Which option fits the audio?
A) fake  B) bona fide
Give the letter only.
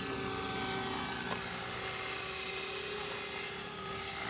B